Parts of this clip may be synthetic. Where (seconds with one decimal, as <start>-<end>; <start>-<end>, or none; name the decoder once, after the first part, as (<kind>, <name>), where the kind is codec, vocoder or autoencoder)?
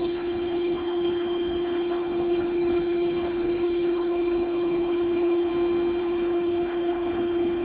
0.0-5.5 (codec, HILCodec); 6.0-7.6